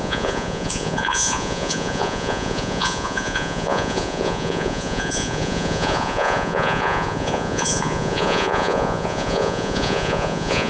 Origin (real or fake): fake